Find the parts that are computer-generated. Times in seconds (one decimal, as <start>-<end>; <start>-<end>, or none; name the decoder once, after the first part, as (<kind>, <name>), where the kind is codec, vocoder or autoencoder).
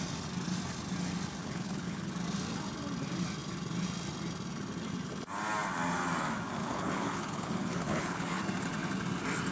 1.4-2.1 (codec, HILCodec); 6.6-8.4